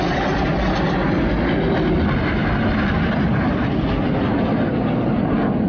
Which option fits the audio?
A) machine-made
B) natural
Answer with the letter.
B